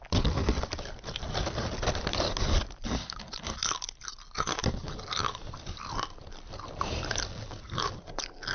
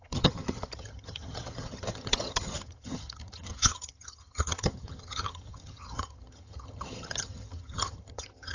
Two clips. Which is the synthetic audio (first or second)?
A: second